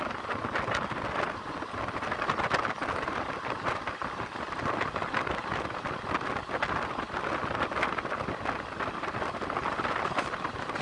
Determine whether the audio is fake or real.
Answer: real